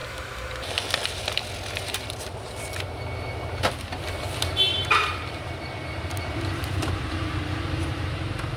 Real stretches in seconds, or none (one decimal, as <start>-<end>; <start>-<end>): 0.7-4.7